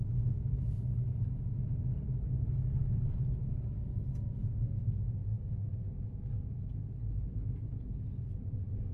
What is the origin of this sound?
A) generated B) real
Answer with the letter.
B